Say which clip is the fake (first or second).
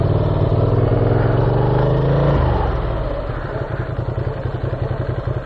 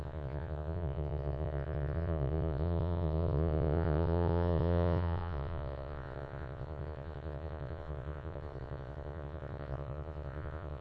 second